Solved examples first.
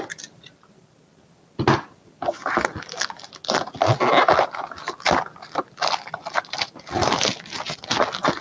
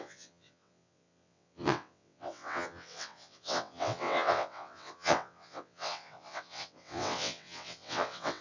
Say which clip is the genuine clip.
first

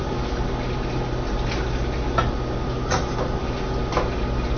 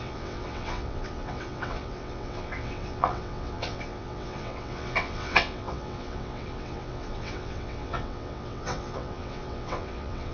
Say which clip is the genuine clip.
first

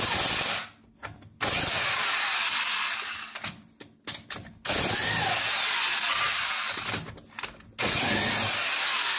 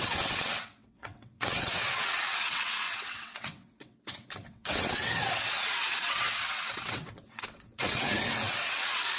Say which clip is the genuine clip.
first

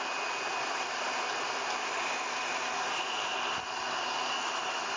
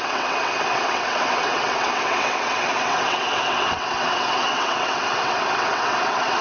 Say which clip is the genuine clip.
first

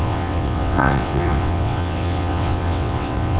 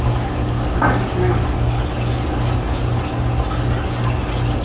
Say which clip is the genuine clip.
second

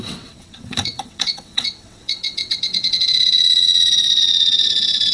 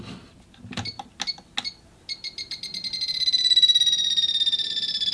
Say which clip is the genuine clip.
second